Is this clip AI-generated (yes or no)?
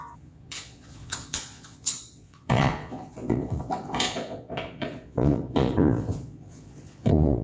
yes